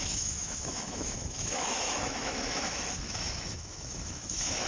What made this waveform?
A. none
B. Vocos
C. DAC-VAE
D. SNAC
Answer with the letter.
C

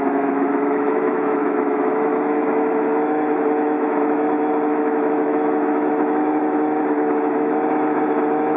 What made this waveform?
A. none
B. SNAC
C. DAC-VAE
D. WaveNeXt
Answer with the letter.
C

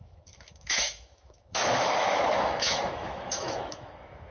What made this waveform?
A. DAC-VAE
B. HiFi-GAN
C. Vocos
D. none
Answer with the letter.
A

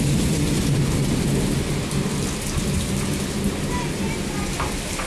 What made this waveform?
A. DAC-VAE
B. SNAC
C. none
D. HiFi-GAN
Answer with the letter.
C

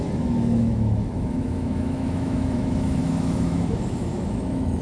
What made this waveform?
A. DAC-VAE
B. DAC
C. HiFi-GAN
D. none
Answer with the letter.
A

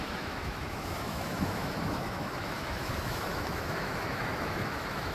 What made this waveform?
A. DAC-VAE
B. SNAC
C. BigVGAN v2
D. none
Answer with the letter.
A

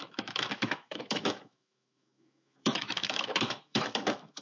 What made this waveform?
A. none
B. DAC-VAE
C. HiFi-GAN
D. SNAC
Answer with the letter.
B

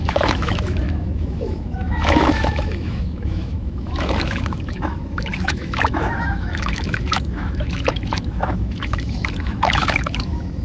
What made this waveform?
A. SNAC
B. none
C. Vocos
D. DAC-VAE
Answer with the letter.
D